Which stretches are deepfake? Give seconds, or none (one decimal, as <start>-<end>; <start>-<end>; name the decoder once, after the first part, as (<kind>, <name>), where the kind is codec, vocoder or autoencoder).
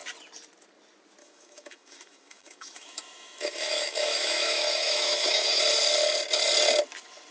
1.2-5.6 (autoencoder, DAC-VAE)